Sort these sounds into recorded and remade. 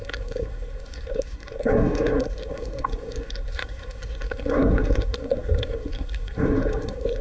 remade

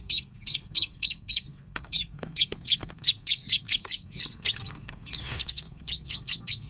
remade